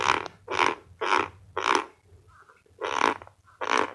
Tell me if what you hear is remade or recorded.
recorded